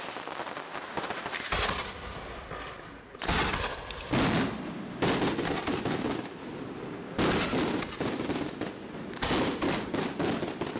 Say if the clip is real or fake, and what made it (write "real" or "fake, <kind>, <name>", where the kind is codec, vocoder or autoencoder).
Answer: real